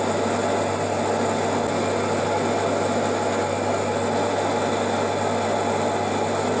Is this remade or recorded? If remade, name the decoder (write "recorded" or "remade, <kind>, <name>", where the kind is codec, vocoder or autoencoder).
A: recorded